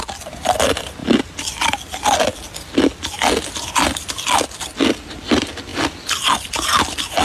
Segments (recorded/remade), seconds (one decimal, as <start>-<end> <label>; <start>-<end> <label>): 0.0-7.2 recorded